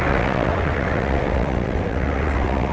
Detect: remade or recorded remade